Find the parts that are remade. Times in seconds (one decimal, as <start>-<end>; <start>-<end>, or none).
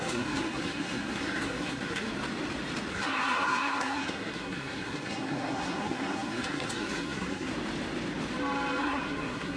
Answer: 0.0-2.1; 2.9-7.5; 8.8-9.6